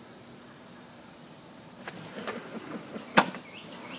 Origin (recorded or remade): recorded